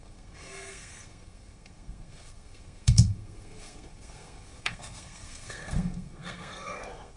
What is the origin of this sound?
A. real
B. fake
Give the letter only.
B